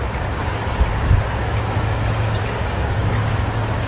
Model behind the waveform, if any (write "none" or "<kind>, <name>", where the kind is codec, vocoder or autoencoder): codec, DAC